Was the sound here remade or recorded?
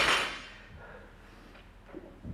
recorded